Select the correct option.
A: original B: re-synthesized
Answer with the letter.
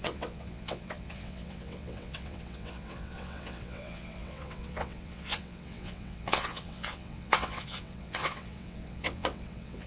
B